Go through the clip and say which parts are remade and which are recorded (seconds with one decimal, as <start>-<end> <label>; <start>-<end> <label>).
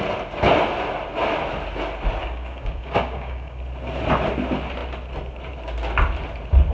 0.0-2.2 recorded; 2.2-3.6 remade; 3.6-6.7 recorded